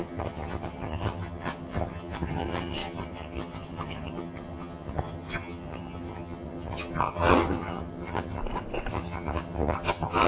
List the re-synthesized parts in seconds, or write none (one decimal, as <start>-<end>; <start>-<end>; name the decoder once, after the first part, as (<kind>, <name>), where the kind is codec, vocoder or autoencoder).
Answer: 0.0-8.4 (vocoder, HiFi-GAN); 8.9-10.3